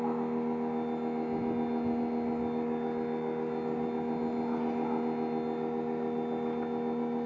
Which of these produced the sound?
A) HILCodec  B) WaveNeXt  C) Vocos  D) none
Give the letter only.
D